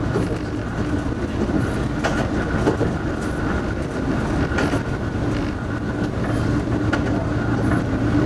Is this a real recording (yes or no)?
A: yes